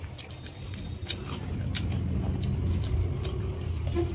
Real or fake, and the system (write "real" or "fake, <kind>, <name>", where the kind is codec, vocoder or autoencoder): real